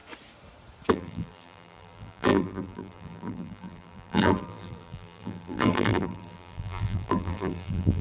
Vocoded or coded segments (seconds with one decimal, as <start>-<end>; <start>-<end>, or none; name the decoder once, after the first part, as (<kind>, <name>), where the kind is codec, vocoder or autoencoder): 0.9-8.0 (vocoder, BigVGAN v2)